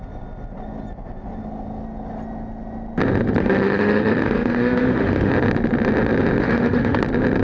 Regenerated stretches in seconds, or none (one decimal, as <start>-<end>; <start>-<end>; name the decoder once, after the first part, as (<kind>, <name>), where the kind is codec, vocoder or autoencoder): 3.4-5.3 (autoencoder, DAC-VAE); 6.4-7.0